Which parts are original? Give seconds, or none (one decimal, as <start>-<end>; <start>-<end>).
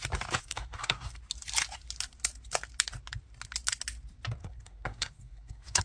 0.0-0.4; 1.2-4.4